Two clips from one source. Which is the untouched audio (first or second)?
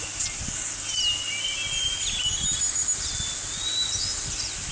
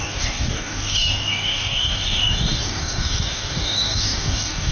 first